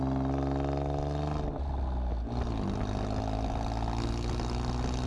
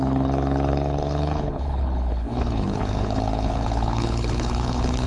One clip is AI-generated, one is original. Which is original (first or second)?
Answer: first